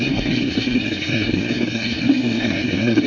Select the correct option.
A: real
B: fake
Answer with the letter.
B